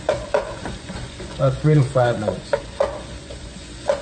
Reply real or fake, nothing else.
fake